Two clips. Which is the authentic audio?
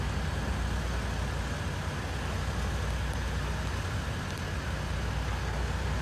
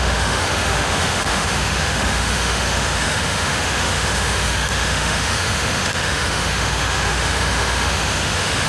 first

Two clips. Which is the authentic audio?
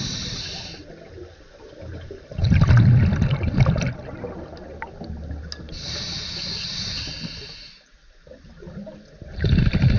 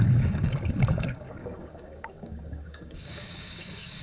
first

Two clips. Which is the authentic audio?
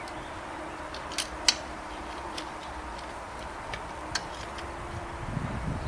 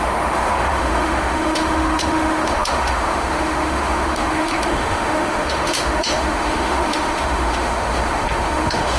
first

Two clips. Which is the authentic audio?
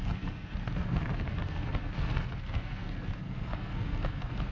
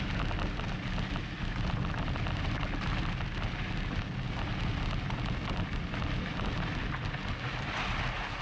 second